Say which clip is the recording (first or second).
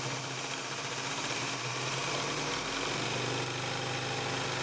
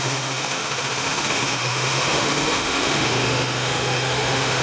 first